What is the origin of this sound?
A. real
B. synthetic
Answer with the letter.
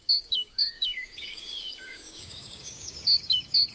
B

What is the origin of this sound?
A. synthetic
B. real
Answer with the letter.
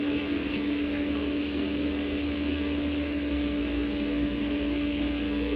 A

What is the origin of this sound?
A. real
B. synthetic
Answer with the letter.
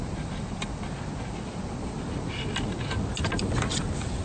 A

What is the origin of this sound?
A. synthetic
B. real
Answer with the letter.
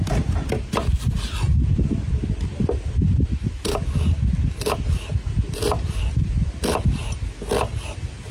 B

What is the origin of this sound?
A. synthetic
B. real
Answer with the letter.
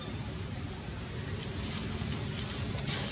B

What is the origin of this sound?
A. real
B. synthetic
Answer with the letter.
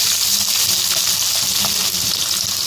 A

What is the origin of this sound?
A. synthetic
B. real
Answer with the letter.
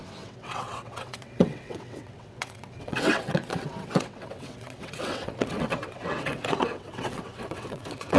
A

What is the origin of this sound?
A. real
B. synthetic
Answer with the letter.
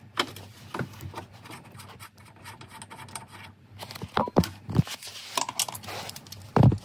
A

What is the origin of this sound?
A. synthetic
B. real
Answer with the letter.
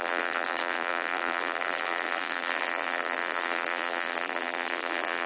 A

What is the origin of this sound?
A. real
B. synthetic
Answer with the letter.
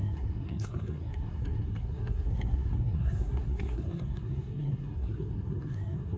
B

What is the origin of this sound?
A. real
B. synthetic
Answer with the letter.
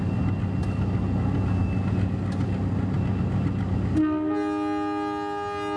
A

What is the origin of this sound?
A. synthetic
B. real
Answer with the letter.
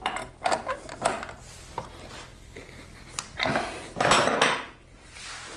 B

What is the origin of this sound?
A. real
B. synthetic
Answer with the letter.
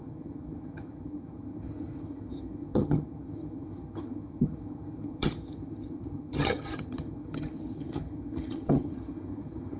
B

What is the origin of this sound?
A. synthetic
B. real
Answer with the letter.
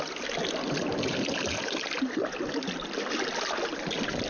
B